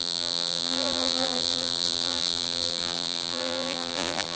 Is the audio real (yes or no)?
no